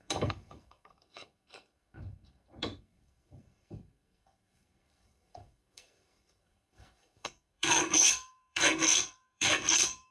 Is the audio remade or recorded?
remade